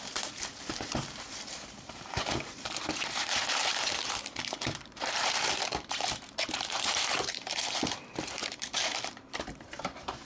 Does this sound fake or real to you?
fake